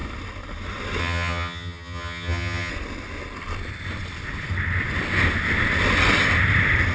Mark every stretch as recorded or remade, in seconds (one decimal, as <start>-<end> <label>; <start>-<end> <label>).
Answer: 0.0-1.0 recorded; 1.0-2.7 remade; 2.7-6.9 recorded